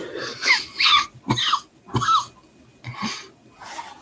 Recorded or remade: recorded